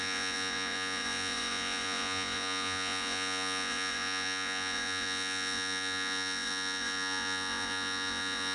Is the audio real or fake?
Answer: fake